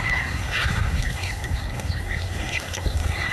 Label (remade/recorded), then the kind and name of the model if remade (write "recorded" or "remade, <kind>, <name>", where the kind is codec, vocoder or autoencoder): remade, codec, SNAC